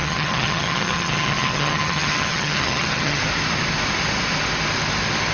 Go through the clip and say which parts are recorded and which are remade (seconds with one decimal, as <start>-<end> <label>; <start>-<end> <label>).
0.0-3.2 remade; 3.2-5.3 recorded